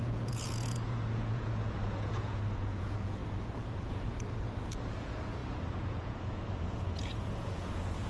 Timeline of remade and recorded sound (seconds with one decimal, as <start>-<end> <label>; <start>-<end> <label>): 0.0-3.2 remade; 3.2-4.9 recorded; 4.9-8.1 remade